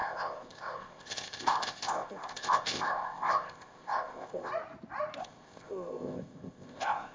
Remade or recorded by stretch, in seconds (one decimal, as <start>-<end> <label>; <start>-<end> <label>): 0.0-4.5 remade; 4.5-5.2 recorded; 5.2-7.1 remade